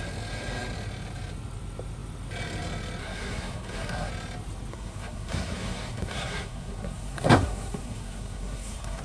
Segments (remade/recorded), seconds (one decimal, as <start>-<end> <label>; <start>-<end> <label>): 0.0-3.0 recorded; 3.0-4.1 remade; 4.1-4.7 recorded; 4.7-9.0 remade